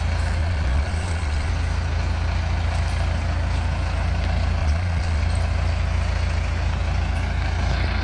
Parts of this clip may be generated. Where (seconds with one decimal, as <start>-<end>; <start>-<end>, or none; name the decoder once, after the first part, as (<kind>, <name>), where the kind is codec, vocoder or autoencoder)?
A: 0.4-1.5 (vocoder, Vocos); 4.6-5.2